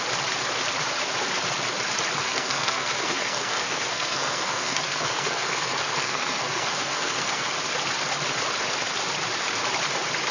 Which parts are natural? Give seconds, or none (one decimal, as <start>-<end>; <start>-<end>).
0.0-2.2; 7.5-10.3